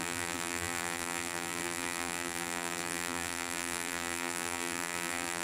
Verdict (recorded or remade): remade